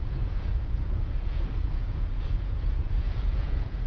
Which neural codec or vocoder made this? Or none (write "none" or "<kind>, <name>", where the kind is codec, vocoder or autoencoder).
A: vocoder, Vocos